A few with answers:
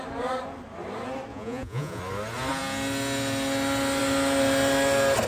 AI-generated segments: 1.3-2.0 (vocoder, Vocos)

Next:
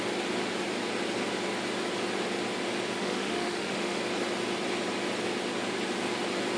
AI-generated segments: 3.0-4.0 (autoencoder, DAC-VAE)

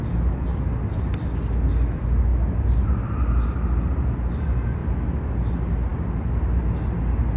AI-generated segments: none

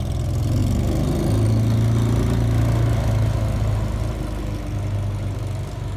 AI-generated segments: none

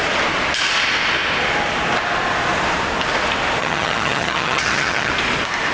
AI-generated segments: 3.6-5.1 (vocoder, HiFi-GAN)